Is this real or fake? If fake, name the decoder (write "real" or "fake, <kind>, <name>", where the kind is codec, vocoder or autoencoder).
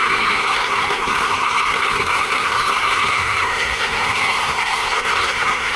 fake, codec, SNAC